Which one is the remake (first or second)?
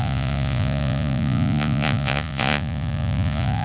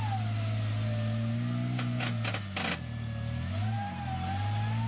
first